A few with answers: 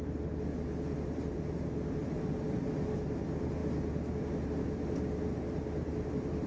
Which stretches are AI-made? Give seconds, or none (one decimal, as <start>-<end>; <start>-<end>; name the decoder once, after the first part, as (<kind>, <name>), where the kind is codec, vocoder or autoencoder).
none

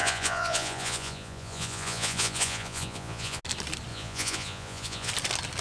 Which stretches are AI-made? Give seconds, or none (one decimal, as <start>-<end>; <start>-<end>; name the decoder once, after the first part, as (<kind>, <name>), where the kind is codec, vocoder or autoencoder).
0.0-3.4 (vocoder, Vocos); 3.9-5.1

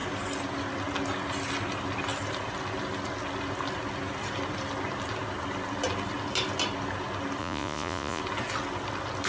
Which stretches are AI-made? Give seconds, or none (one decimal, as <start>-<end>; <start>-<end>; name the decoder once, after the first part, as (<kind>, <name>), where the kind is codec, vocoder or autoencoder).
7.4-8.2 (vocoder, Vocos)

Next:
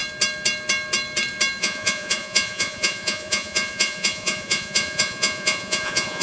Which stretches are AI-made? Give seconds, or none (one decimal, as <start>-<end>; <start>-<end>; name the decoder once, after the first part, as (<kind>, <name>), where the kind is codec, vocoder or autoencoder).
1.6-6.2 (vocoder, Vocos)

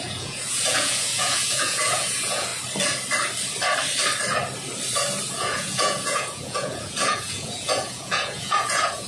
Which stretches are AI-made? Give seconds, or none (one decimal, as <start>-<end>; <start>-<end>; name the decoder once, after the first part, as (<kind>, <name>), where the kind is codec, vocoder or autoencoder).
0.0-2.5 (vocoder, Vocos); 5.3-9.1